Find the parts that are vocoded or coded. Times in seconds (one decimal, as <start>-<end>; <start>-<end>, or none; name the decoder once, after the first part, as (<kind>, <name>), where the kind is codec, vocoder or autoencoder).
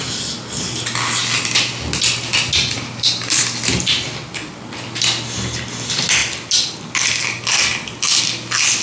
none